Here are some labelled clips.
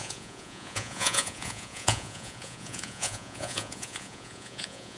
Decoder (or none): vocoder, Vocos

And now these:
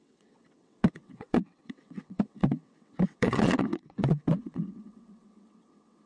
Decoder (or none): vocoder, WaveNeXt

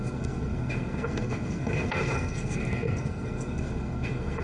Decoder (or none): codec, SNAC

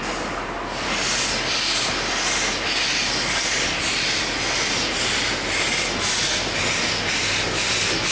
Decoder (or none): none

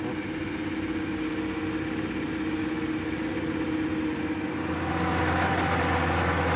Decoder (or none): none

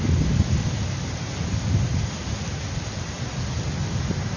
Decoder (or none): none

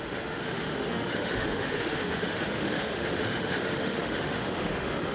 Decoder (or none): autoencoder, DAC-VAE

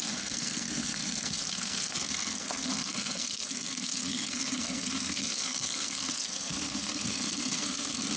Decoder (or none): codec, SNAC